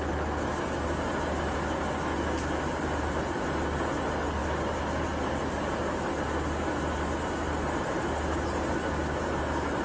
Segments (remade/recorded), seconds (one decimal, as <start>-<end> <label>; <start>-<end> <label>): 0.0-9.8 recorded